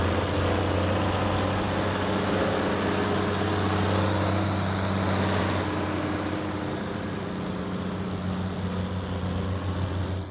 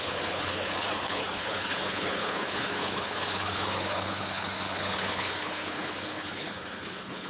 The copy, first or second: second